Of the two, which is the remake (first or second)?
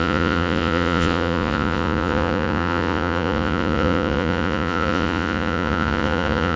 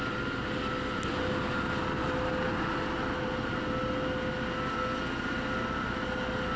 first